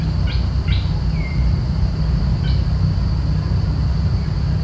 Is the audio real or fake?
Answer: real